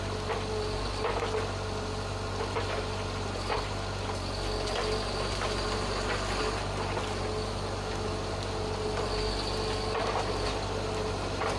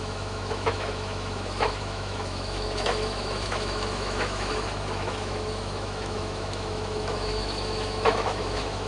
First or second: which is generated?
second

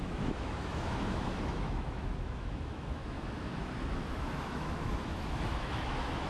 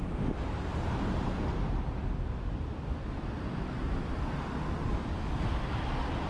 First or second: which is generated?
first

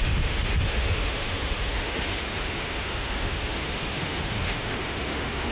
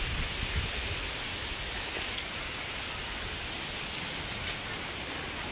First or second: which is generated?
first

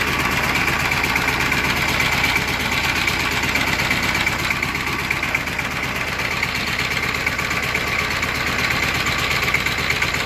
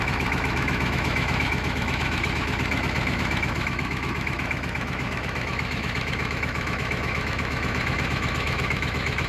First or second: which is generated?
second